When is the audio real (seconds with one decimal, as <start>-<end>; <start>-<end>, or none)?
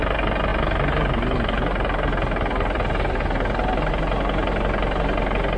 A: 0.0-5.6